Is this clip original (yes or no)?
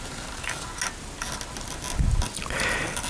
yes